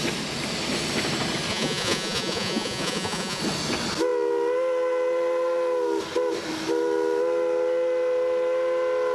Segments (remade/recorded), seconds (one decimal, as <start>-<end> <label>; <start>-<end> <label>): 0.0-1.5 recorded; 1.5-3.4 remade; 3.4-9.1 recorded